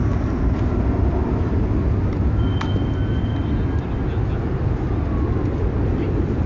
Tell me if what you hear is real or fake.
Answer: real